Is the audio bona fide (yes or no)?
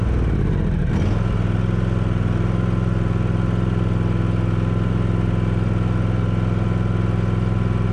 yes